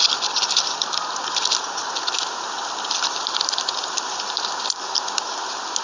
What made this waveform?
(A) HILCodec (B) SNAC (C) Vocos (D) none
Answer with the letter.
D